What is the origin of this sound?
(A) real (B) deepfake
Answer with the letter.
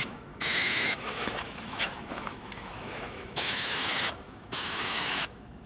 B